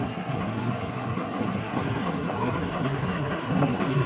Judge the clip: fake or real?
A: fake